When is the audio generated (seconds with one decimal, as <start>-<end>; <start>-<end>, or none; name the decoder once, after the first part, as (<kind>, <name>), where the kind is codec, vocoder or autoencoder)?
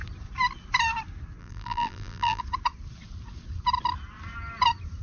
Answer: 1.4-2.4 (vocoder, BigVGAN v2)